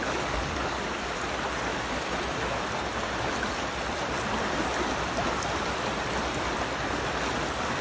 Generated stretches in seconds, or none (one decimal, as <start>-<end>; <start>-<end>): 0.0-1.2